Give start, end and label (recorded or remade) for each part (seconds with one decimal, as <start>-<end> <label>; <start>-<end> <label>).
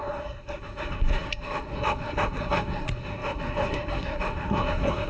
0.0-5.1 remade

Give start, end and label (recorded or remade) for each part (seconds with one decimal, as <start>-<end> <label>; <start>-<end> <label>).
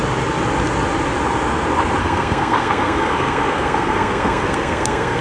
0.0-2.0 recorded; 2.0-5.2 remade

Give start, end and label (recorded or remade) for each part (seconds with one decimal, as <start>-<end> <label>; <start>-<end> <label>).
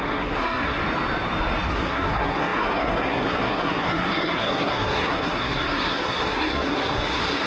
0.0-0.8 remade; 0.8-1.7 recorded; 1.7-7.5 remade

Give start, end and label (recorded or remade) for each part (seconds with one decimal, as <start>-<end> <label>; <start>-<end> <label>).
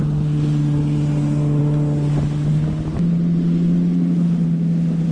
0.0-5.1 recorded